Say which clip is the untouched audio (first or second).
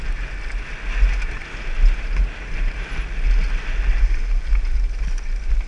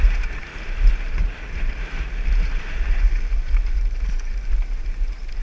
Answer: first